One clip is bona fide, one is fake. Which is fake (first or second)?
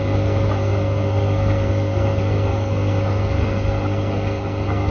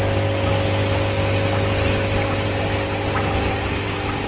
first